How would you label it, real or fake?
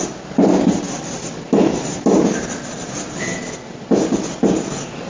real